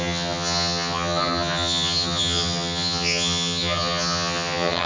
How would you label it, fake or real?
fake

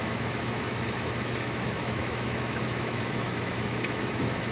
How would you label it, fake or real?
fake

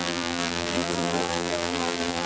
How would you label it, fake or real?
fake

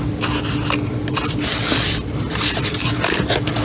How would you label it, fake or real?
real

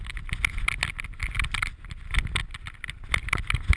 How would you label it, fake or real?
real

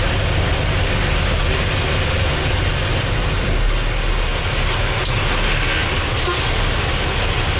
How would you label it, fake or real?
real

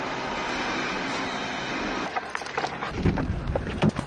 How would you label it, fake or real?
real